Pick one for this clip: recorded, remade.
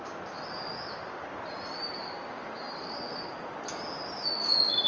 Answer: recorded